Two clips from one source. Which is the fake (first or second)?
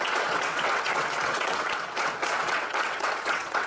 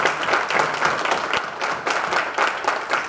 first